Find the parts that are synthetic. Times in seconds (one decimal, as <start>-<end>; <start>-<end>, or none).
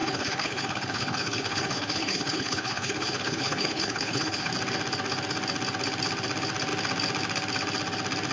0.0-4.5